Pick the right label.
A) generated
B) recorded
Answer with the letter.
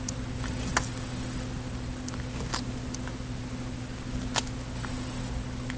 B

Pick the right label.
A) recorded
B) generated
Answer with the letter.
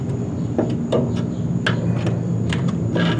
A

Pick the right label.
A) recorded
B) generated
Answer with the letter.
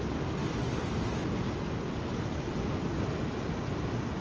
A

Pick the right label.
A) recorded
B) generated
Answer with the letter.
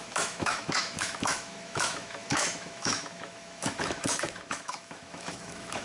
B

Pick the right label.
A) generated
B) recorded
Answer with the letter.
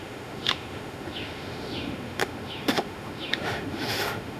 A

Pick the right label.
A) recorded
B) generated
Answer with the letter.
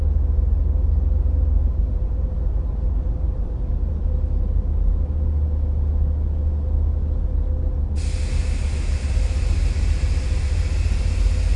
A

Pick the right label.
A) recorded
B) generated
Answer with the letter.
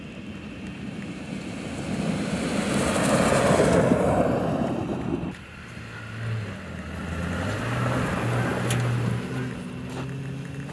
A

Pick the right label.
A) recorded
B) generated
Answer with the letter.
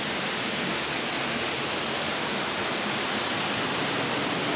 A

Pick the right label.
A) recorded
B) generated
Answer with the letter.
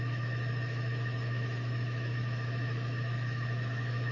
B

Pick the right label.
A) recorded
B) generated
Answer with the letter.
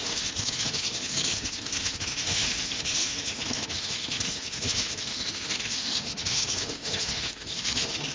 B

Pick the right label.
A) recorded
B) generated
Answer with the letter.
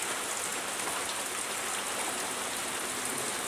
A